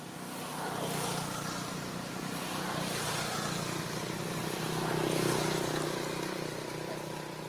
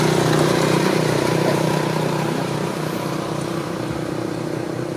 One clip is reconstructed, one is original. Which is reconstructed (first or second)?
second